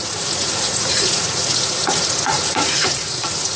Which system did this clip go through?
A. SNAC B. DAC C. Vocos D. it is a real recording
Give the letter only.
C